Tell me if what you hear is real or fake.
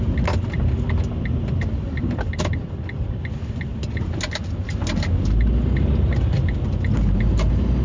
real